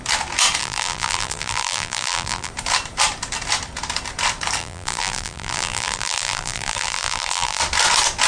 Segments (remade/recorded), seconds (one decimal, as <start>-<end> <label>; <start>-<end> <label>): 0.0-0.6 recorded; 0.6-2.5 remade; 2.5-4.6 recorded; 4.6-7.6 remade; 7.6-8.3 recorded